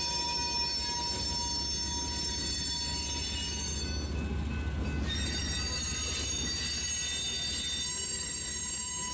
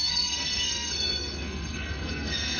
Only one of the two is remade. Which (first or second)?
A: second